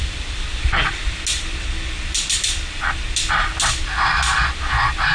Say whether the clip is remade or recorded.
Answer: recorded